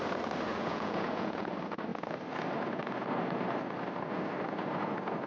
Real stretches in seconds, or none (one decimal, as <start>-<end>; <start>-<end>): 0.0-0.5; 1.5-5.3

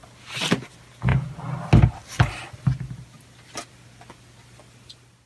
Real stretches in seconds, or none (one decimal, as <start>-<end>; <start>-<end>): 0.0-5.3